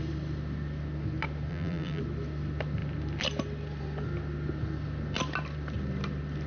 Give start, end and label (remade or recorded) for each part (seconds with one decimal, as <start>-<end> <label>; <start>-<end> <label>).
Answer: 0.0-1.5 recorded; 1.5-2.0 remade; 2.0-6.5 recorded